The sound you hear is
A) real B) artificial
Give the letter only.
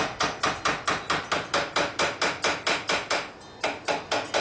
A